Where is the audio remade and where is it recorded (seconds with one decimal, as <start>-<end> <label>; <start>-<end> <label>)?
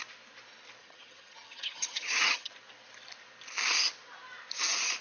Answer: 0.0-0.8 recorded; 0.8-2.5 remade; 2.5-5.0 recorded